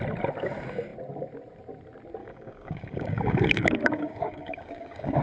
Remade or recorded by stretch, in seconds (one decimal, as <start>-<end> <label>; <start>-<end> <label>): 0.0-2.2 recorded; 2.2-5.2 remade